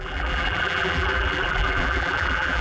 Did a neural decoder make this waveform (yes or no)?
yes